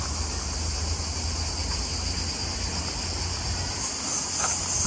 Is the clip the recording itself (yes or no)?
yes